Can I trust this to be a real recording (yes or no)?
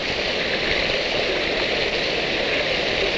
yes